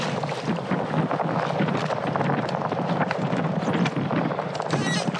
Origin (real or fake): real